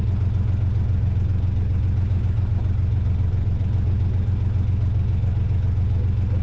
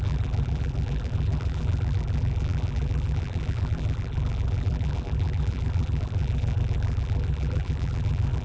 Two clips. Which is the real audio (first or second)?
first